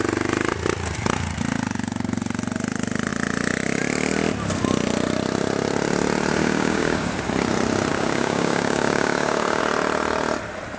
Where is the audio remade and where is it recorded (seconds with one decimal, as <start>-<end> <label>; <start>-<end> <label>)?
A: 0.0-6.4 recorded; 6.4-7.1 remade; 7.1-7.9 recorded; 7.9-9.6 remade; 9.6-10.8 recorded